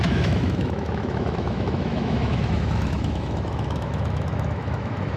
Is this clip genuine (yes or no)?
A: no